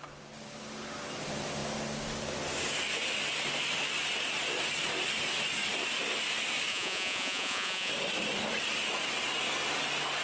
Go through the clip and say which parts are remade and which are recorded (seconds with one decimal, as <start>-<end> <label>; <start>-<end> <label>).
0.0-6.7 recorded; 6.7-7.9 remade; 7.9-10.2 recorded

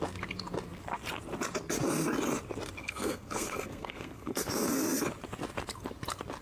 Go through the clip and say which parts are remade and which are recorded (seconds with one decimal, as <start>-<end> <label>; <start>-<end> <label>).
0.0-2.8 recorded; 2.8-4.5 remade; 4.5-6.4 recorded

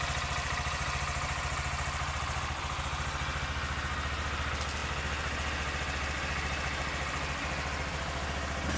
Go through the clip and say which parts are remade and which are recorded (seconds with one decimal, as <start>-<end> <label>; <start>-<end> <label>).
0.0-8.8 recorded